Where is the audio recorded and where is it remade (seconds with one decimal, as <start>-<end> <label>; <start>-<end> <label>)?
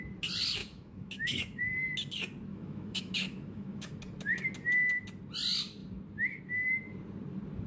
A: 0.0-0.6 recorded; 0.6-1.6 remade; 1.6-2.5 recorded; 2.5-3.9 remade; 3.9-7.7 recorded